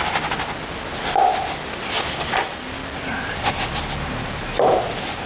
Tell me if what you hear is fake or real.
real